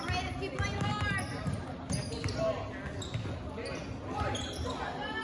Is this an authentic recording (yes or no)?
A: yes